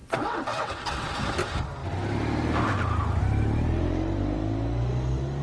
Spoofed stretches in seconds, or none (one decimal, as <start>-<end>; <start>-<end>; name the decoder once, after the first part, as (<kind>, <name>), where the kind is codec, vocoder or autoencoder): 0.0-1.2 (vocoder, WaveNeXt)